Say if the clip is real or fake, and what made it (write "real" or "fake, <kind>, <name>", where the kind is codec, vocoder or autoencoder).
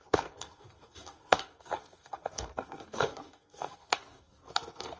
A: fake, codec, SNAC